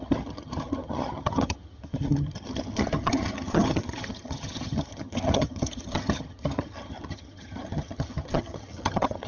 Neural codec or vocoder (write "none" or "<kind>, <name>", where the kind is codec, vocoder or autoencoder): vocoder, HiFi-GAN